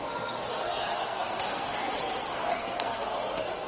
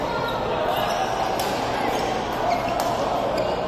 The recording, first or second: second